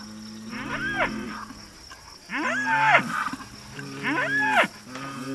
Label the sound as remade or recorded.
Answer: recorded